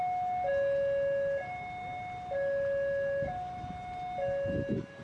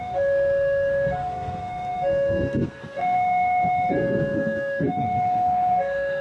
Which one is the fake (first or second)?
second